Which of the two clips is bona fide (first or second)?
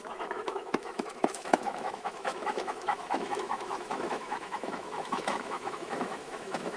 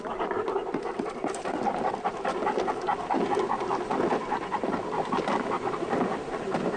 second